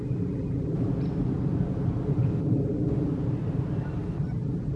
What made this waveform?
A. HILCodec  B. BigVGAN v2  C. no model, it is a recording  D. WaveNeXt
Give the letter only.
B